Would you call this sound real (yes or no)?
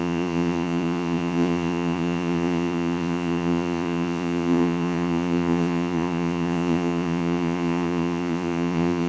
no